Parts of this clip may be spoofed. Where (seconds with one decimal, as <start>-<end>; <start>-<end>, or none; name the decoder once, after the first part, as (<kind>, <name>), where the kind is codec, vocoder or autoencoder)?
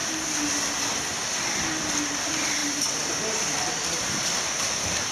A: 2.6-4.1 (vocoder, BigVGAN v2)